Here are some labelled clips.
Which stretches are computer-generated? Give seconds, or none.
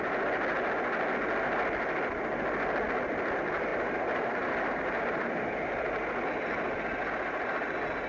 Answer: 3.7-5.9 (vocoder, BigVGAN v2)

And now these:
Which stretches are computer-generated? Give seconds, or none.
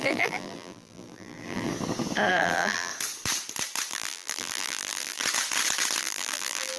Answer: 0.0-1.7 (vocoder, BigVGAN v2); 2.3-2.9; 3.9-5.2; 6.0-6.8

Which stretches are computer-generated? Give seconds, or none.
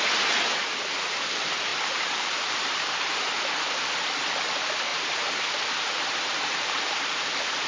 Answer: 1.7-3.4 (vocoder, BigVGAN v2); 4.9-7.2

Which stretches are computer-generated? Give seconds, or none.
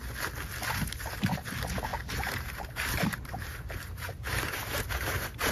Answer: 0.7-5.5 (vocoder, BigVGAN v2)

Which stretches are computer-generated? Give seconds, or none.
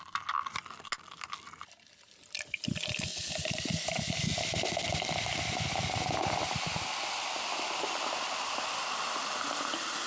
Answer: none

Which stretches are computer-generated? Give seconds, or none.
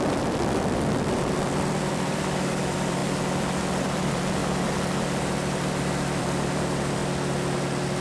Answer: 0.0-3.0 (vocoder, BigVGAN v2); 3.8-4.4; 5.4-7.0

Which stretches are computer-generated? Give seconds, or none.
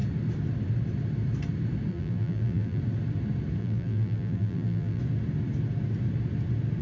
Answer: 1.9-2.8 (vocoder, BigVGAN v2); 3.6-5.0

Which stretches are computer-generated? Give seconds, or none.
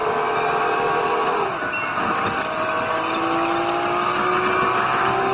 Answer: none